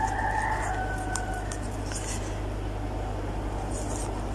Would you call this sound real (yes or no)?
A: yes